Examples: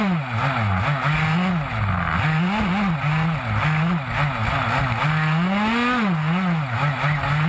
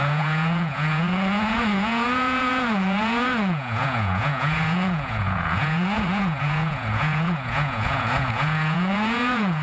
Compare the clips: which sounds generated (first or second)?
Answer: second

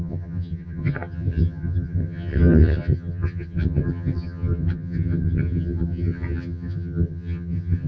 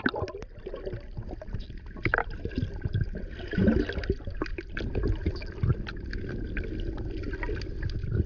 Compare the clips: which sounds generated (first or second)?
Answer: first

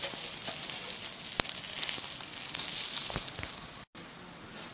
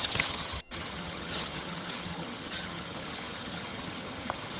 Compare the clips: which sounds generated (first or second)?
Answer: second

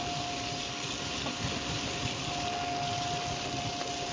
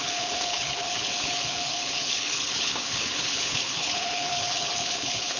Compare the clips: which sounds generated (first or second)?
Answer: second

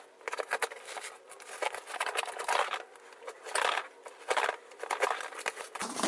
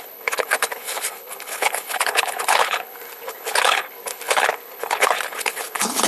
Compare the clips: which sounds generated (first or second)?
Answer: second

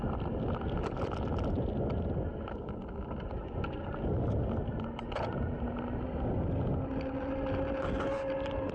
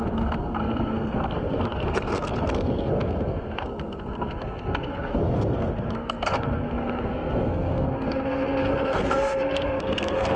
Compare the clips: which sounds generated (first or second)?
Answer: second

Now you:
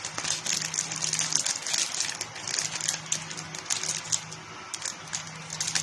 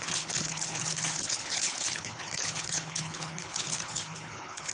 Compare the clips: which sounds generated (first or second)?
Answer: second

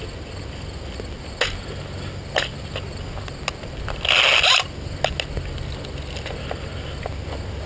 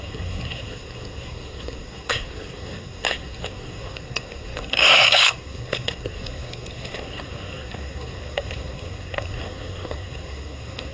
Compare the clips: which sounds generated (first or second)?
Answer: second